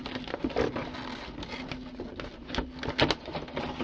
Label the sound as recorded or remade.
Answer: recorded